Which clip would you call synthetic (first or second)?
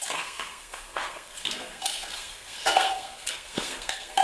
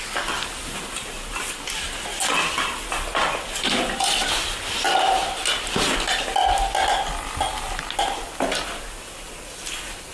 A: first